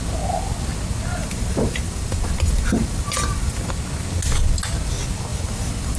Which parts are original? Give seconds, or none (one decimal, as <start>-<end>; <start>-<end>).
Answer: 0.0-1.2; 3.7-5.3